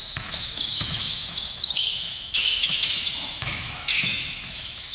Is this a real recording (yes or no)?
no